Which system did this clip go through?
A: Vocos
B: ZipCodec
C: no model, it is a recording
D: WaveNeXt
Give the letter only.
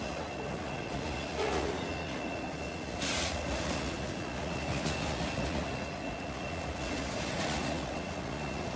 A